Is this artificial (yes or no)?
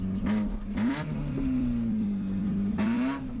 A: yes